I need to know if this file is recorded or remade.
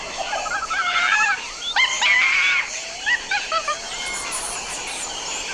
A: remade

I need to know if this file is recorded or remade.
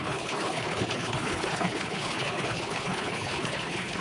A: remade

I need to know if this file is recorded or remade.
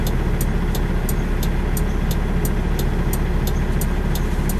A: recorded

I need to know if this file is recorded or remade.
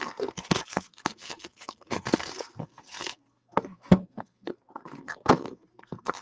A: remade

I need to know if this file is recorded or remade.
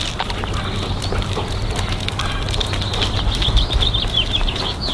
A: recorded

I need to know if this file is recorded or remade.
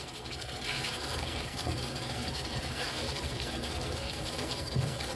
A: remade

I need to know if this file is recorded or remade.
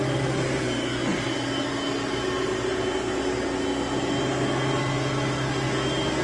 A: recorded